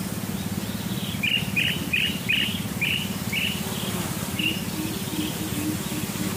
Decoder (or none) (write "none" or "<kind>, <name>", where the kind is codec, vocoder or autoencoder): none